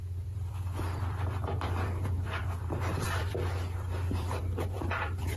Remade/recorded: remade